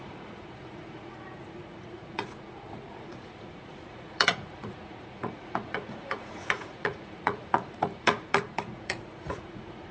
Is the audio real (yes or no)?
no